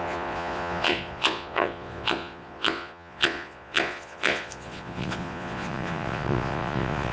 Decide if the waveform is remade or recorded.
remade